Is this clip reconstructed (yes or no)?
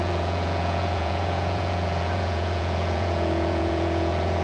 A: yes